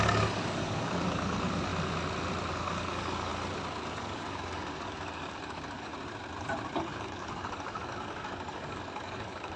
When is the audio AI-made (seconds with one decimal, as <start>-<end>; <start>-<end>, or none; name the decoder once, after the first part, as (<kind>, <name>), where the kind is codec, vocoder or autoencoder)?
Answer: 0.0-1.7 (codec, DAC); 2.5-3.3; 3.9-5.9; 6.8-9.6